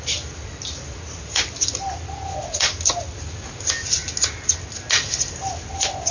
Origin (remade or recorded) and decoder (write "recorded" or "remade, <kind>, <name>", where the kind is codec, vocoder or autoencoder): recorded